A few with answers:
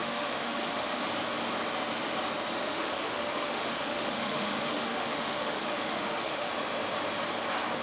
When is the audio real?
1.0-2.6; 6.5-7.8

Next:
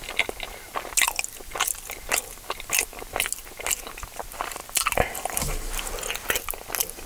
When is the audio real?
0.0-7.1

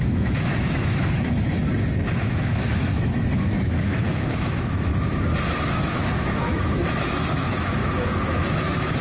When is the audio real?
1.6-2.2; 4.9-5.6

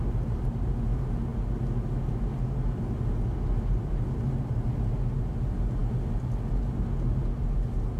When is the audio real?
0.0-8.0

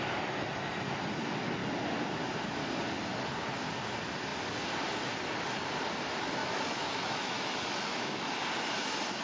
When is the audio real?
0.0-6.4; 8.2-9.2

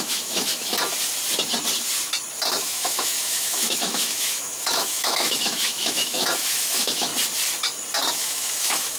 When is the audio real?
0.7-2.6; 7.1-8.1

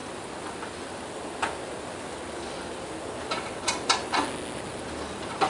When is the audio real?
0.0-5.5